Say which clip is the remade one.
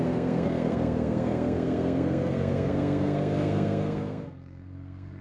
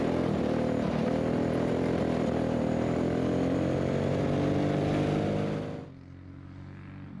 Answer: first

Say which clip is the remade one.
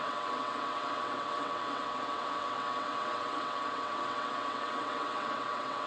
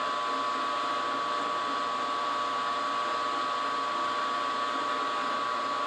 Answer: first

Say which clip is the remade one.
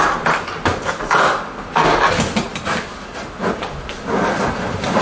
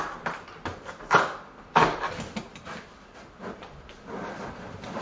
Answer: second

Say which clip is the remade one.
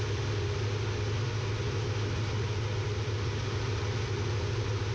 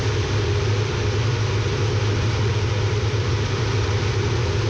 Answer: second